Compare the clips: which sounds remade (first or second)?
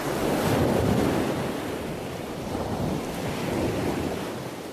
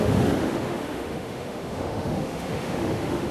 second